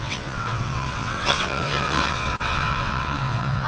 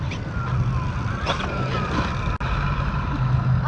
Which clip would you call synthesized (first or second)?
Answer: first